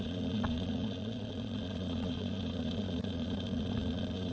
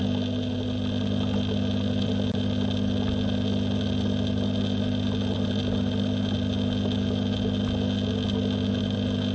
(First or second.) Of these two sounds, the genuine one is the second